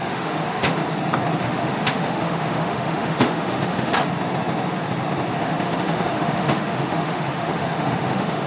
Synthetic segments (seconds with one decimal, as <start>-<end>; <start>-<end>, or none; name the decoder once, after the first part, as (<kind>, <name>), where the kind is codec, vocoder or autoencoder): 0.0-0.8 (autoencoder, DAC-VAE); 1.4-4.0; 5.3-8.5